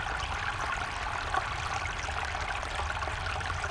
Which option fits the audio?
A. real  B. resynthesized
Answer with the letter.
A